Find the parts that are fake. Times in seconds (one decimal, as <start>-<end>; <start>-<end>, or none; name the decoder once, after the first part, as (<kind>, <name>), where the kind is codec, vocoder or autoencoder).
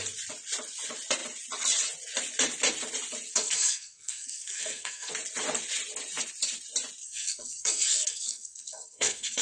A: 3.3-5.1 (codec, SNAC); 7.0-9.4